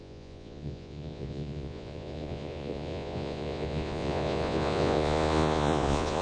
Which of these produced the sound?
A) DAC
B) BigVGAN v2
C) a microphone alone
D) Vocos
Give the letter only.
D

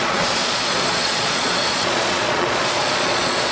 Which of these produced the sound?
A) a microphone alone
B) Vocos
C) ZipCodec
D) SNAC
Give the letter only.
B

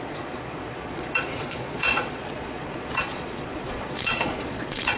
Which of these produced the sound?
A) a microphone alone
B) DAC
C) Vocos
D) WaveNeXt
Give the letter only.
C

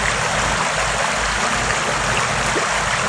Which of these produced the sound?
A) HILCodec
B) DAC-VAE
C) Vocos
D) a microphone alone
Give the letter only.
D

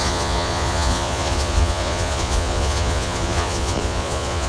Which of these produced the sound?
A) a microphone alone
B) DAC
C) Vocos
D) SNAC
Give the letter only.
C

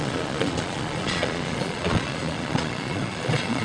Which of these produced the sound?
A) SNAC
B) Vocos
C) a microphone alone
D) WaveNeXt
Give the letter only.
B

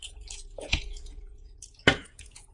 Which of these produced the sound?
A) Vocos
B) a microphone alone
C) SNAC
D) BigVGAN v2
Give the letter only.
A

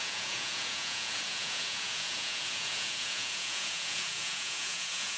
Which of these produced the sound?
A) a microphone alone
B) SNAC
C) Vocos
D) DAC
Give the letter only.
C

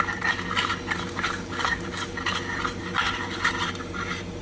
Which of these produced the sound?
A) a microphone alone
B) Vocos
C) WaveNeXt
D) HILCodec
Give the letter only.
A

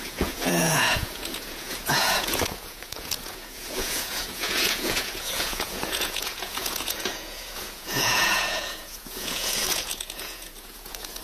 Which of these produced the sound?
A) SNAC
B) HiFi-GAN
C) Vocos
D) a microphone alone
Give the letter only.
C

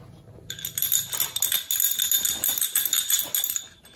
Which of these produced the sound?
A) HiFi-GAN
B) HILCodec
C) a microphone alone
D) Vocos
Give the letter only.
C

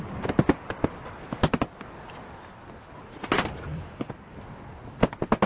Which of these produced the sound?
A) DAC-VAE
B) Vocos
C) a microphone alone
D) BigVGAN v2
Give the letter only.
C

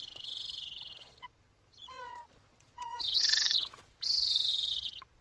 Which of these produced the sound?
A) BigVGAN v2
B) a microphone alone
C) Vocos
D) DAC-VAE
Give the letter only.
C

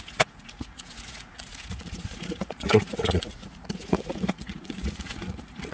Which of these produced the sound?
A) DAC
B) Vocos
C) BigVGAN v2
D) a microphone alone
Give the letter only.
B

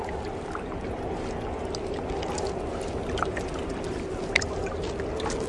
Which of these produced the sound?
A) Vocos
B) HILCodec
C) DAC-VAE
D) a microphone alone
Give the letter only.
D